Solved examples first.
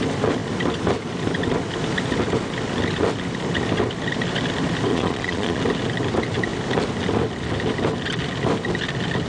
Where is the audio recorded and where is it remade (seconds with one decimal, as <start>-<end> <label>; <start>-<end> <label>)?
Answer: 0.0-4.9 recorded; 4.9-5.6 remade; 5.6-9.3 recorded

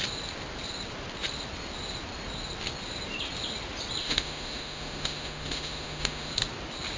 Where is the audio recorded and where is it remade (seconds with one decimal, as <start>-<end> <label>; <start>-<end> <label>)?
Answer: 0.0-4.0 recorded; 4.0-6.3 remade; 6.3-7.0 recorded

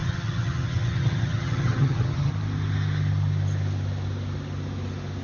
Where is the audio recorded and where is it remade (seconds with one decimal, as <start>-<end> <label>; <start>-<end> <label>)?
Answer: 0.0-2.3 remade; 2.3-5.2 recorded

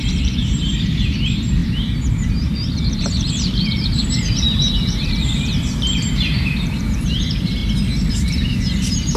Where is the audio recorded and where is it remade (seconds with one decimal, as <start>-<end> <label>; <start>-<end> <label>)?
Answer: 0.0-7.6 remade; 7.6-8.1 recorded; 8.1-9.2 remade